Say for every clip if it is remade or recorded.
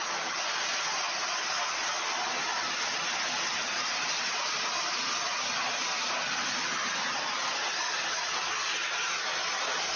recorded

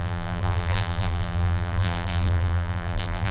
remade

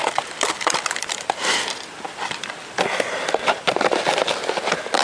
remade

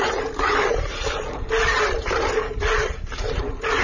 remade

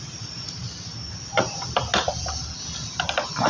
recorded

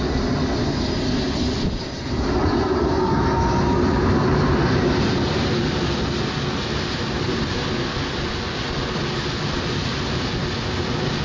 recorded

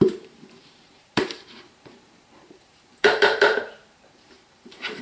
remade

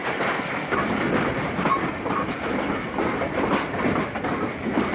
recorded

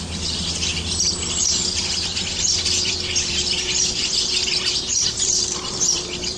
remade